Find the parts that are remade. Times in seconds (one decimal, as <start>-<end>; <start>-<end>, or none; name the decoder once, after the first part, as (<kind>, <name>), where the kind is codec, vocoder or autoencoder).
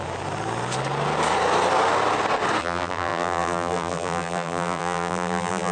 2.6-5.7 (vocoder, BigVGAN v2)